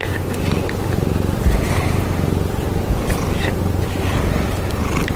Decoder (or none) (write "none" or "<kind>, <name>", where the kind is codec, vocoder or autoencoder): none